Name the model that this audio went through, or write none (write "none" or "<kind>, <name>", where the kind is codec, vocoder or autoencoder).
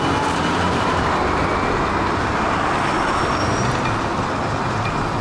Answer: none